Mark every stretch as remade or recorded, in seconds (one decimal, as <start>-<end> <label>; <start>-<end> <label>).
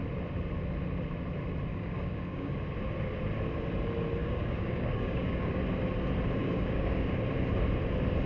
0.0-1.7 recorded; 1.7-2.5 remade; 2.5-4.2 recorded; 4.2-5.6 remade; 5.6-6.4 recorded; 6.4-7.2 remade; 7.2-8.3 recorded